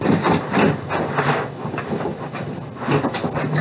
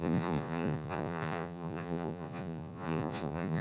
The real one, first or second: first